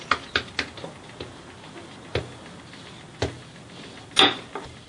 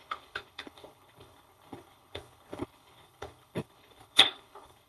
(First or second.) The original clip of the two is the first